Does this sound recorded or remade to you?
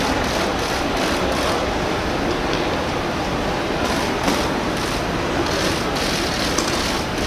recorded